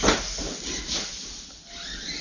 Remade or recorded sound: recorded